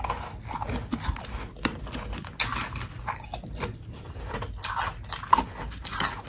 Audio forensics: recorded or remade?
recorded